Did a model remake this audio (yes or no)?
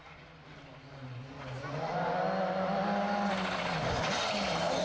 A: no